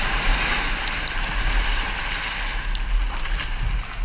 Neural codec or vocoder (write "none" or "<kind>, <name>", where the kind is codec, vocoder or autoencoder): none